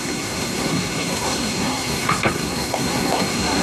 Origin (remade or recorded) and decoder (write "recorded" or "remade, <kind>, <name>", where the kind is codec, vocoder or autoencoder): remade, codec, SNAC